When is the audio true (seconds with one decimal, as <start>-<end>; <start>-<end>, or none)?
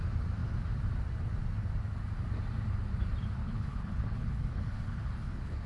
0.0-3.4